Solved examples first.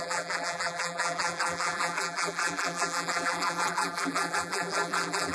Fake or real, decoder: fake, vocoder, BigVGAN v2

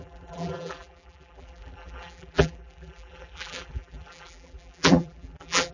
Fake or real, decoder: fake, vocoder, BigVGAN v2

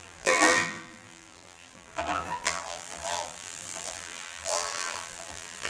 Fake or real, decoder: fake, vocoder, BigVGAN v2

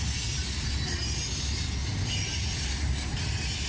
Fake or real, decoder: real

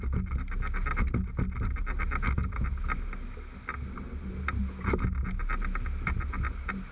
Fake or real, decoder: real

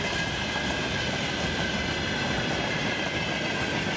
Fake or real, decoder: real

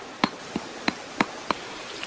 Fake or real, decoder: fake, vocoder, BigVGAN v2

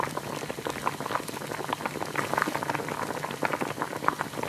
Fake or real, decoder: real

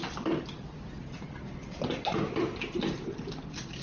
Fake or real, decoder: real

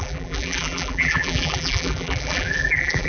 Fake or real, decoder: fake, vocoder, BigVGAN v2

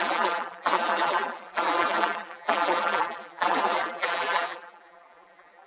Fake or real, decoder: fake, vocoder, BigVGAN v2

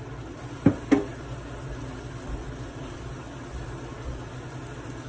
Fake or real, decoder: real